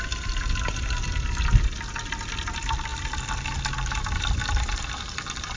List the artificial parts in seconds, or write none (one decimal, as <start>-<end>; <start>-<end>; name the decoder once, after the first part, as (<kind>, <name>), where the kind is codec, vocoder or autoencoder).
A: none